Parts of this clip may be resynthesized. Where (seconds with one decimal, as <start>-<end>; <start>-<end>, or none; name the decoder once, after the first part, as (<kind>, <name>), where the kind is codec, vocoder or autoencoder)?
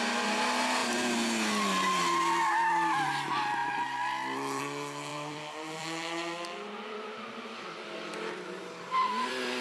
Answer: 3.6-4.6 (vocoder, BigVGAN v2); 5.1-9.6